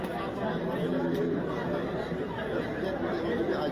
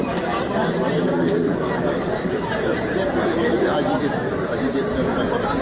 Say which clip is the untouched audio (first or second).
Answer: first